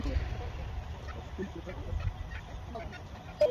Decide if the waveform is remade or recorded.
recorded